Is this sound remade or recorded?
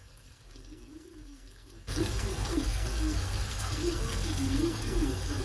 remade